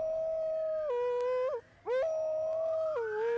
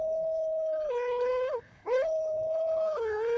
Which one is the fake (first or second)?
second